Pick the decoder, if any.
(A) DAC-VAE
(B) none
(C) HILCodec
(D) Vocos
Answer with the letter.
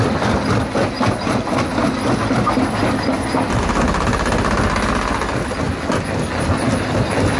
B